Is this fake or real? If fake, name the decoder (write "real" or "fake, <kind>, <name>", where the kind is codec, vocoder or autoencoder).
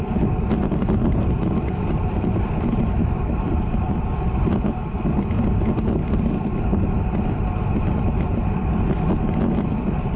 real